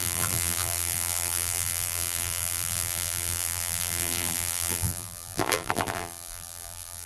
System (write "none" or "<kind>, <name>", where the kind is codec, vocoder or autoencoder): vocoder, BigVGAN v2